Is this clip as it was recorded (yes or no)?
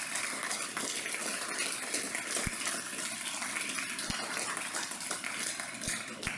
yes